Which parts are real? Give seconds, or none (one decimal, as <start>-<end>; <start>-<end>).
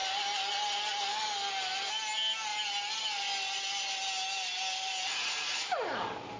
0.0-6.4